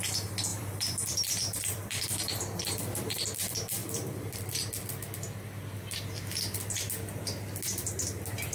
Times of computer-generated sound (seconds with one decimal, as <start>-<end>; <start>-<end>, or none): 0.5-3.1; 3.8-4.4